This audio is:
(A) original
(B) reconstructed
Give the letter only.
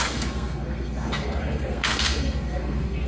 B